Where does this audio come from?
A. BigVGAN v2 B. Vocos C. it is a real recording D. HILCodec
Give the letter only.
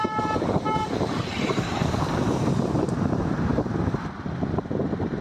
A